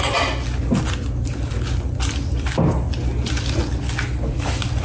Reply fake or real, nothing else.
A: real